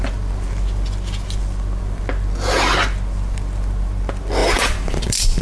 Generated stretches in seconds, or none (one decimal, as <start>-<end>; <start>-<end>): 4.4-5.4